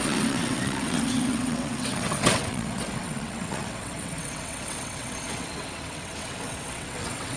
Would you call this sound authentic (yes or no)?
no